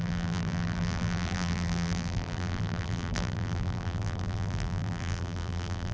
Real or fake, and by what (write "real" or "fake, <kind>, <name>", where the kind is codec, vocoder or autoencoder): fake, vocoder, BigVGAN v2